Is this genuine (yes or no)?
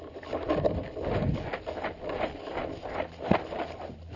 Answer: yes